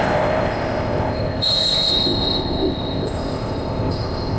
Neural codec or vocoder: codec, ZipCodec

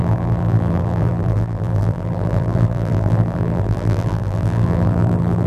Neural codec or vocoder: vocoder, BigVGAN v2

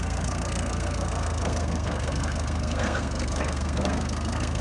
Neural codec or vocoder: codec, SNAC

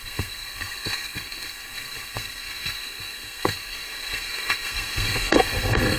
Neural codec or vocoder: codec, SNAC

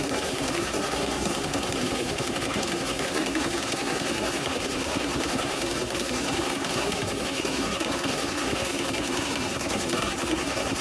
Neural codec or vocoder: codec, SNAC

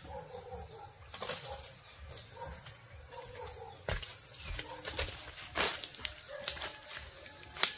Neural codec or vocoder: none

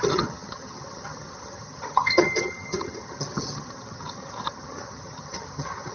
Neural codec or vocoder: vocoder, HiFi-GAN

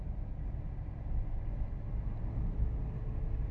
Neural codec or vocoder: none